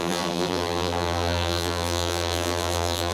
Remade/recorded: remade